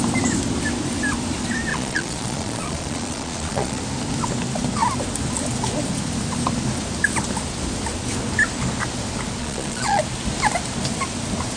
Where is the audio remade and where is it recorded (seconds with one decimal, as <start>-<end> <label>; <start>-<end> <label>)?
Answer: 0.0-1.7 recorded; 1.7-3.8 remade; 3.8-9.4 recorded; 9.4-10.0 remade; 10.0-11.6 recorded